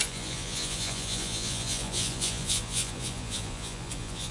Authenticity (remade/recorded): remade